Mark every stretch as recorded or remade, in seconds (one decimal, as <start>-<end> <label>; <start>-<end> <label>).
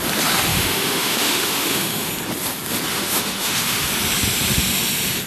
0.0-0.5 recorded; 0.5-2.1 remade; 2.1-2.9 recorded; 2.9-3.9 remade; 3.9-5.3 recorded